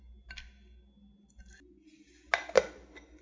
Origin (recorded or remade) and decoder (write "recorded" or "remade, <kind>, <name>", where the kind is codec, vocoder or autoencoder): recorded